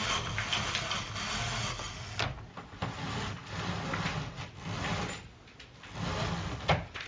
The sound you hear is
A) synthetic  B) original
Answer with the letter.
B